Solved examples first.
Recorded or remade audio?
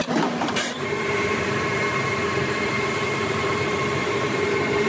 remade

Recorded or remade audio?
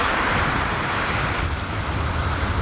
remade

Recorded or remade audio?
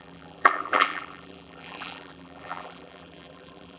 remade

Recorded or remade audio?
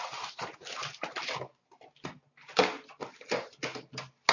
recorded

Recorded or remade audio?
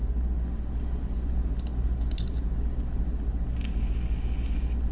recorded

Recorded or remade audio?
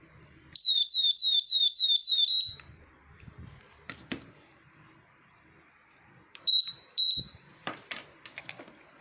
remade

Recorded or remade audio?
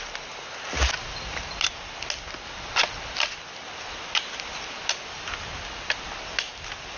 recorded